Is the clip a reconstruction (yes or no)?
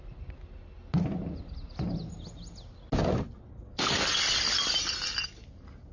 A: no